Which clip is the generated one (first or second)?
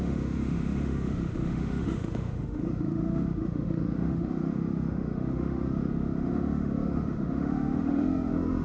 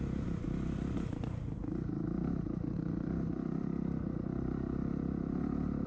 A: first